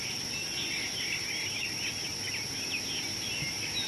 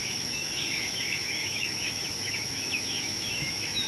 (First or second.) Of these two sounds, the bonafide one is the first